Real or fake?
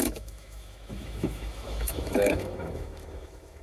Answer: fake